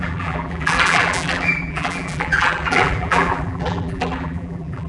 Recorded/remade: remade